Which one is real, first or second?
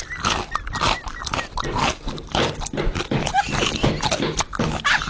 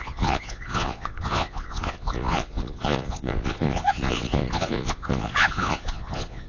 first